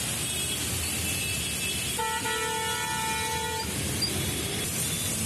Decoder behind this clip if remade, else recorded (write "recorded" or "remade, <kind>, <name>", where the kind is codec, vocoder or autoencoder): recorded